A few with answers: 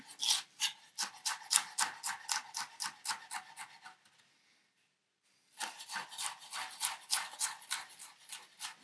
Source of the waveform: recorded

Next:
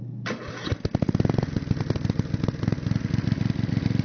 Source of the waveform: recorded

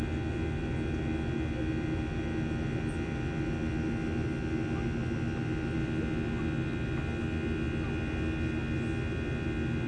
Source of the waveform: recorded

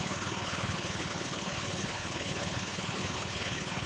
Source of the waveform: remade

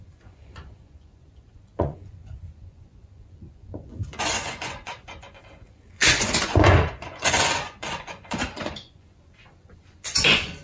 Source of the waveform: remade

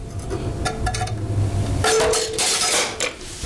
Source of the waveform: recorded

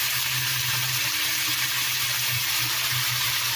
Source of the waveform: recorded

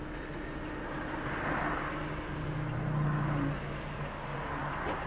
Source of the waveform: recorded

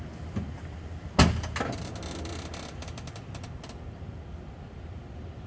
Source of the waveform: recorded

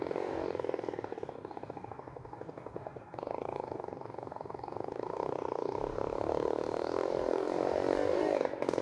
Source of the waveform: remade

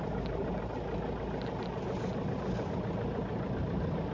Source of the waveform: recorded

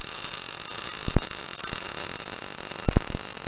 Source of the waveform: recorded